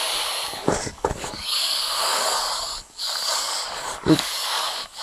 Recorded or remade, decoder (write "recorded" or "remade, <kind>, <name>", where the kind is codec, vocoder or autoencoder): remade, codec, DAC